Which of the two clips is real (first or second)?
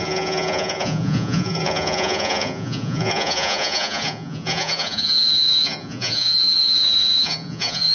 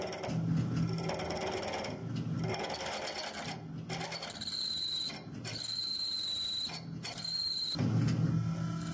second